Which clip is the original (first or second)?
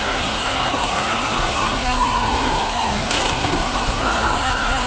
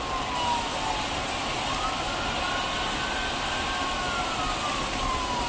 second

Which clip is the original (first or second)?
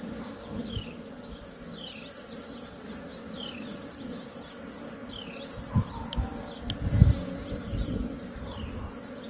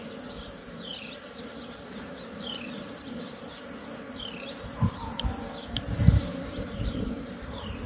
first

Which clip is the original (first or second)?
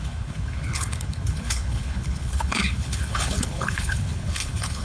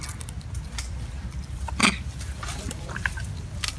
second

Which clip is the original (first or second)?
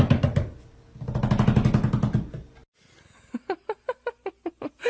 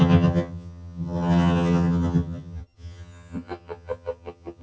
first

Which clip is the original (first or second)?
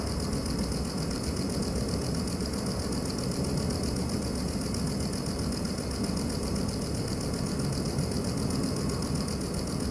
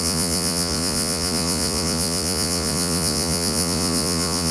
first